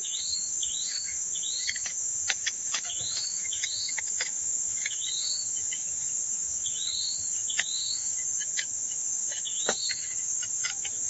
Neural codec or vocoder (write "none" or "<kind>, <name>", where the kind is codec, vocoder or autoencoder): autoencoder, DAC-VAE